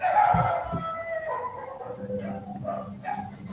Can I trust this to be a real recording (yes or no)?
yes